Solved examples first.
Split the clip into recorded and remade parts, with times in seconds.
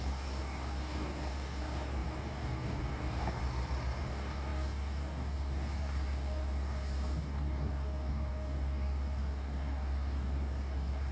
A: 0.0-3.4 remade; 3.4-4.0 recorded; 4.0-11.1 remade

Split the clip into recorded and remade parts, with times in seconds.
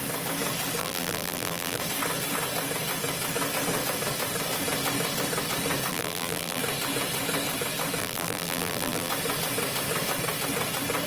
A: 0.0-0.8 recorded; 0.8-1.8 remade; 1.8-5.9 recorded; 5.9-6.6 remade; 6.6-8.0 recorded; 8.0-9.1 remade; 9.1-11.1 recorded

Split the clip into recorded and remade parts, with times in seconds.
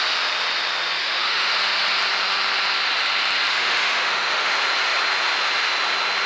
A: 0.0-1.0 recorded; 1.0-1.6 remade; 1.6-3.5 recorded; 3.5-4.5 remade; 4.5-6.3 recorded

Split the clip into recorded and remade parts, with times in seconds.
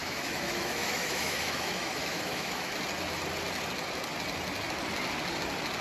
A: 0.0-2.7 remade; 2.7-5.8 recorded